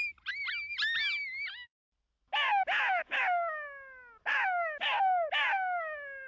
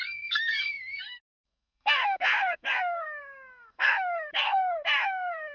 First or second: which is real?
first